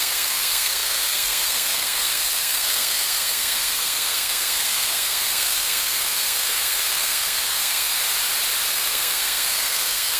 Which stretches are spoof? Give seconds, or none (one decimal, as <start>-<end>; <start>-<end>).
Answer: 0.0-8.0; 8.7-10.2